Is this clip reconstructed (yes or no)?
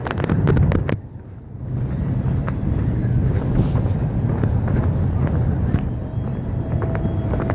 no